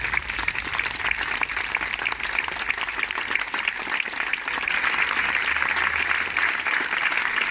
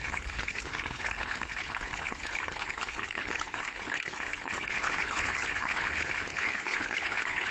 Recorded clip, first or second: first